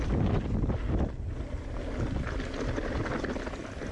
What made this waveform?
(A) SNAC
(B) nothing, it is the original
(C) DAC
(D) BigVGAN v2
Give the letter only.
B